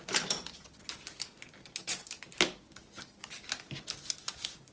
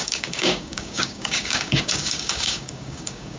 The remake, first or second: second